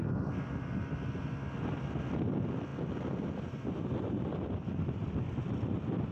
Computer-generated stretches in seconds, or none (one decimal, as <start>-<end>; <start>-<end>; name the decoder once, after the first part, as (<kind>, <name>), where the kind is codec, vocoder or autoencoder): none